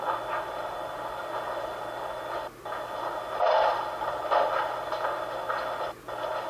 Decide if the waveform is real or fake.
real